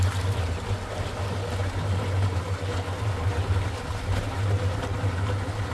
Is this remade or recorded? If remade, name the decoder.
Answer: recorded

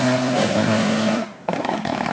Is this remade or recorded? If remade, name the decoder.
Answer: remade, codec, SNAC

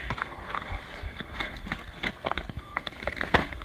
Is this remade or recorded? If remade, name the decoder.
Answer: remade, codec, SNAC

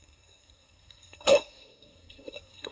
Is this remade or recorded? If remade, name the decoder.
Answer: remade, codec, SNAC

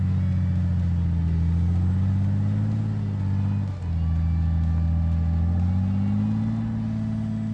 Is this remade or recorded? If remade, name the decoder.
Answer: recorded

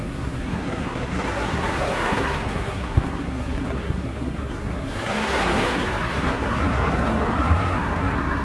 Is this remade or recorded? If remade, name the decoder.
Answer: remade, codec, SNAC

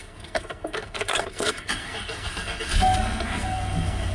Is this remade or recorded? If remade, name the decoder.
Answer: remade, codec, SNAC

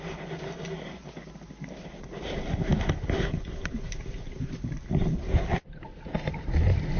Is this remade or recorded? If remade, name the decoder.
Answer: recorded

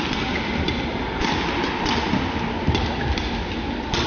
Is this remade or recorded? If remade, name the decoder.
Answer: recorded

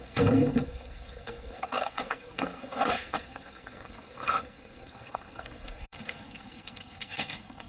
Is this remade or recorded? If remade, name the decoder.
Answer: remade, codec, SNAC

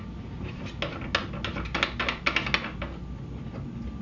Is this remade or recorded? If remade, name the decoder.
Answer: recorded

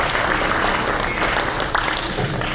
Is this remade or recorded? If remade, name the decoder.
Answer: recorded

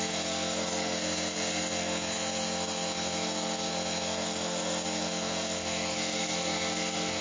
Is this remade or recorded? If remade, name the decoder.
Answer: remade, codec, SNAC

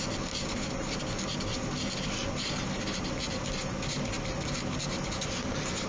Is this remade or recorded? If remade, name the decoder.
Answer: recorded